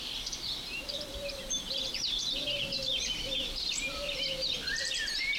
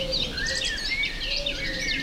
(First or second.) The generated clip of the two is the first